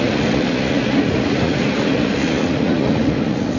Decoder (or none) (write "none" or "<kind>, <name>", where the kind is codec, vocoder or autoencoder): vocoder, Vocos